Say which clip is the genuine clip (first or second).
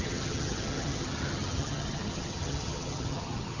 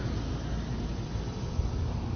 second